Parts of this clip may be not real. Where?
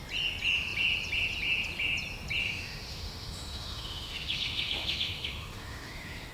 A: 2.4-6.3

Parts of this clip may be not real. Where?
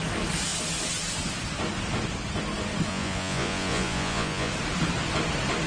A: 2.9-4.5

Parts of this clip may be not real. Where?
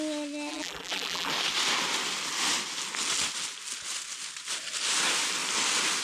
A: 0.5-1.3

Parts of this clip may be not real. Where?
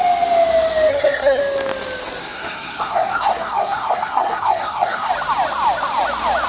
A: 0.9-1.4; 2.2-5.1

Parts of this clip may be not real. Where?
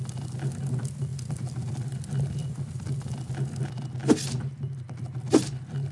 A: none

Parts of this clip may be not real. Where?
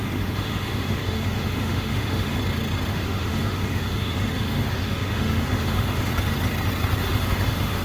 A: 0.0-2.4; 2.9-6.1; 7.0-7.8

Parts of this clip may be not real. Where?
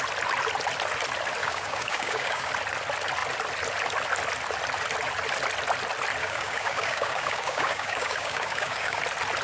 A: 1.4-2.5; 6.2-9.0